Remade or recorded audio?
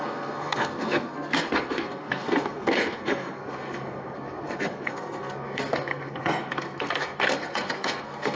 remade